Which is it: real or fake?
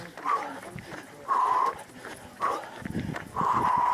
real